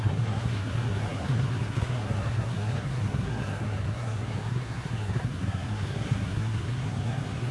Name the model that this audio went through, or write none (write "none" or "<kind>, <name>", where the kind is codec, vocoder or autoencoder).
codec, SNAC